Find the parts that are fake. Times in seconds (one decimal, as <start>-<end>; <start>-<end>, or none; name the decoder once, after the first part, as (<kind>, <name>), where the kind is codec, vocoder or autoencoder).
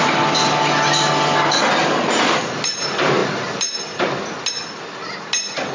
none